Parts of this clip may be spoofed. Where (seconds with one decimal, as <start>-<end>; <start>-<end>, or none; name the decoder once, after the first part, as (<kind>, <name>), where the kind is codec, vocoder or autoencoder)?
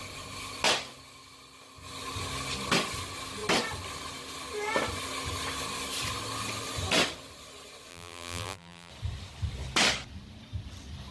7.9-8.9 (vocoder, BigVGAN v2)